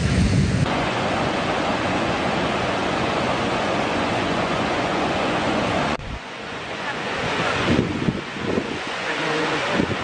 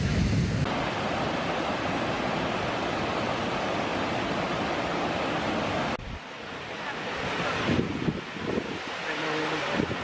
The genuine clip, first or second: second